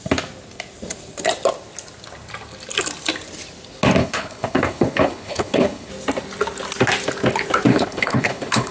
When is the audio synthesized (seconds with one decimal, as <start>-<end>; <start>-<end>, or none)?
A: 4.0-5.9; 7.7-8.7